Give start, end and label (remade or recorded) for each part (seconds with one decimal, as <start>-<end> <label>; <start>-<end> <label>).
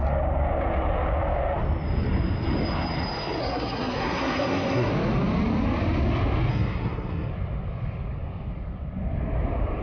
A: 0.0-3.4 recorded; 3.4-4.9 remade; 4.9-6.5 recorded; 6.5-7.3 remade; 7.3-9.8 recorded